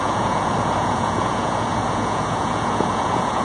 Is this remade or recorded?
remade